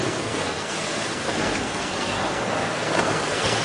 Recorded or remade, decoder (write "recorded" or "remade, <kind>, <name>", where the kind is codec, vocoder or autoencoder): remade, codec, SNAC